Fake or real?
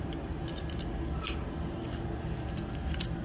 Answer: real